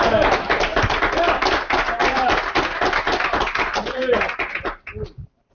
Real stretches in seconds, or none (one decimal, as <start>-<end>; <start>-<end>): 0.0-0.7; 1.5-2.0